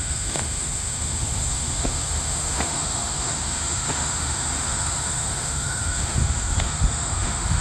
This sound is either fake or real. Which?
fake